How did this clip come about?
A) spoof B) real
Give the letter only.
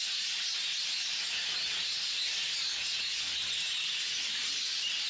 B